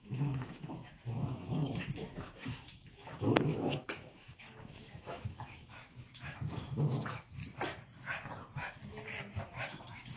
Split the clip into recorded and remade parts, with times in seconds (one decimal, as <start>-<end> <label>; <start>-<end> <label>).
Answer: 0.0-7.4 remade; 7.4-9.4 recorded; 9.4-10.2 remade